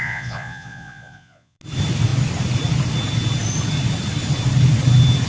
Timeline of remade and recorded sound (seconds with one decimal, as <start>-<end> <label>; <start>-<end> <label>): 0.0-1.6 remade; 1.6-5.3 recorded